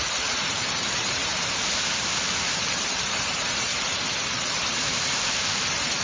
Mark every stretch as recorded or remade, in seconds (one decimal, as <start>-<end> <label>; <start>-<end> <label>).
0.0-6.0 remade